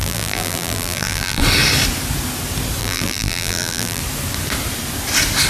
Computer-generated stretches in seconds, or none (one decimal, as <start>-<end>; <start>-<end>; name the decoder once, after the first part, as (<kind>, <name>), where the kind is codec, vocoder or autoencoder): 0.0-1.4 (vocoder, BigVGAN v2); 2.8-4.0